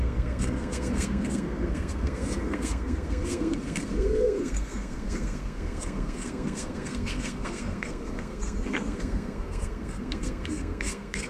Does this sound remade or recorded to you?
remade